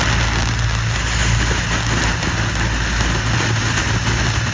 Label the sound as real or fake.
real